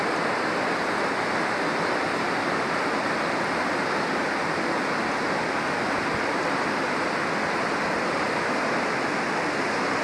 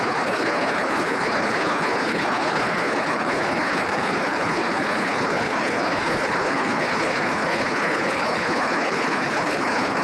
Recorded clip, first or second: first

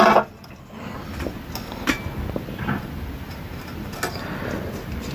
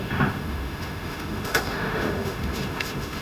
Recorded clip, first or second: first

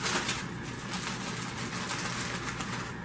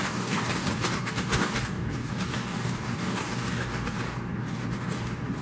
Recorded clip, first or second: first